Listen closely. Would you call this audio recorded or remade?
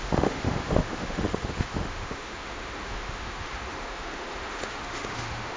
remade